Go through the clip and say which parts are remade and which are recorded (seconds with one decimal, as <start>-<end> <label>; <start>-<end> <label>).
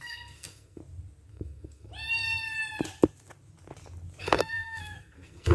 0.0-0.8 remade; 0.8-1.3 recorded; 1.3-1.9 remade; 1.9-4.2 recorded; 4.2-5.5 remade